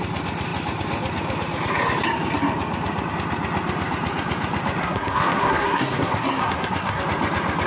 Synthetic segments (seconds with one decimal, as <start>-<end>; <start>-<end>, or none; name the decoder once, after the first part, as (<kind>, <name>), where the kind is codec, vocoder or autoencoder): 4.8-7.0 (codec, SNAC)